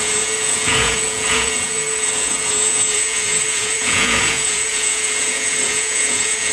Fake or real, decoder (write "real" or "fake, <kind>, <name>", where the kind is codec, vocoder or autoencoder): fake, vocoder, Vocos